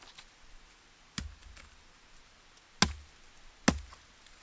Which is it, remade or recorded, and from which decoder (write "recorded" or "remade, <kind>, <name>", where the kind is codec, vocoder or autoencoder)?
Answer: recorded